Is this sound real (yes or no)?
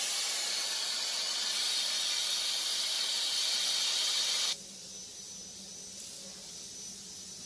yes